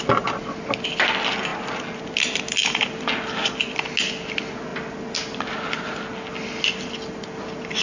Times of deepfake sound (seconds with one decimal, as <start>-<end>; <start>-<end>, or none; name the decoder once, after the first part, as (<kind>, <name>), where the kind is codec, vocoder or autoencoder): none